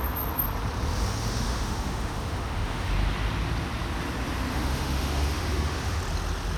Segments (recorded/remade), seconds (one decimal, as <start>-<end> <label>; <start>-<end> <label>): 0.0-1.2 recorded; 1.2-2.9 remade; 2.9-4.5 recorded; 4.5-6.0 remade; 6.0-6.6 recorded